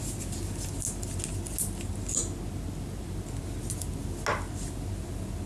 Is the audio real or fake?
real